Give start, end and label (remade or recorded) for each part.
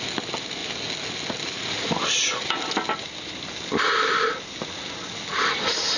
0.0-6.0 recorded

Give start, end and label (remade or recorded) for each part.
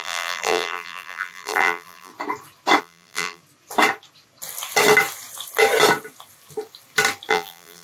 0.0-2.1 remade; 2.1-2.8 recorded; 2.8-3.4 remade; 3.4-7.3 recorded; 7.3-7.8 remade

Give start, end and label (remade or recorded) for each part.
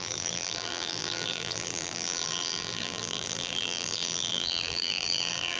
0.0-5.6 remade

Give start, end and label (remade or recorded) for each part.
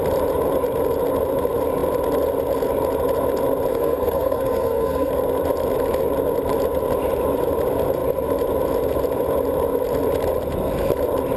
0.0-3.7 recorded; 3.7-5.1 remade; 5.1-11.4 recorded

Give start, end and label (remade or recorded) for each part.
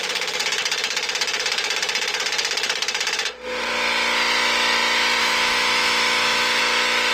0.0-5.2 recorded; 5.2-6.6 remade; 6.6-7.1 recorded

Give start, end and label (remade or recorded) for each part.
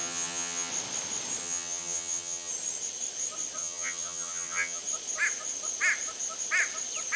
0.0-0.7 remade; 0.7-1.4 recorded; 1.4-2.5 remade; 2.5-3.6 recorded; 3.6-4.8 remade; 4.8-7.2 recorded